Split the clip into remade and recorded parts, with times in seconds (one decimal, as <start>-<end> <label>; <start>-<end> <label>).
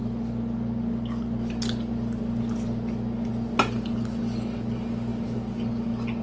0.0-6.2 recorded